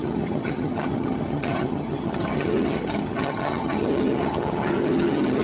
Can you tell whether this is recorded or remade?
remade